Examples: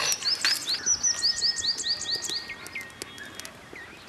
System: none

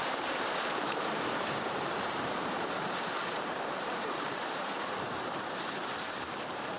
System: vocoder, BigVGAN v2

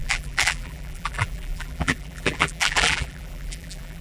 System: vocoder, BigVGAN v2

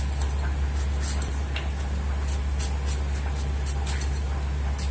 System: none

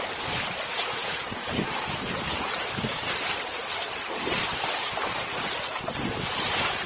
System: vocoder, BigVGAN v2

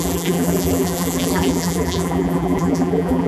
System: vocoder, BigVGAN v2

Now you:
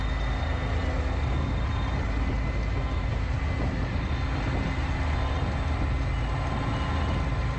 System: none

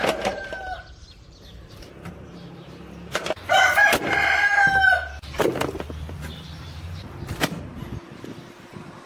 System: vocoder, BigVGAN v2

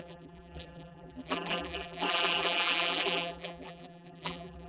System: vocoder, BigVGAN v2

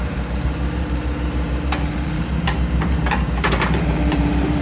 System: vocoder, BigVGAN v2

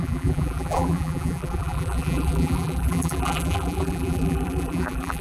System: vocoder, BigVGAN v2